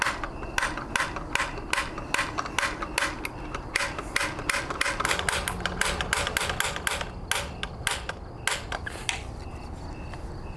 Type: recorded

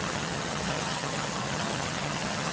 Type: remade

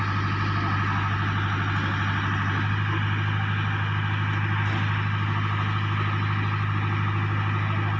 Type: recorded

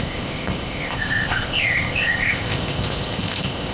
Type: remade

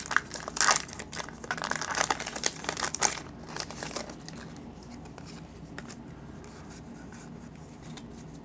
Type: recorded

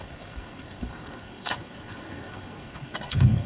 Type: remade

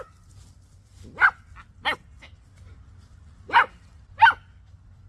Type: recorded